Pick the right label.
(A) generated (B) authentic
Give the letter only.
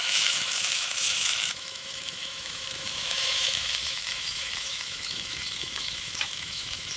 A